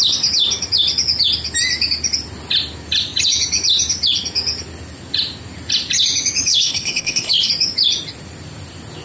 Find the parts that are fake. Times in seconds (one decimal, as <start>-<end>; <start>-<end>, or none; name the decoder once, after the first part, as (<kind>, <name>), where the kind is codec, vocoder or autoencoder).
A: 6.5-7.5 (codec, HILCodec)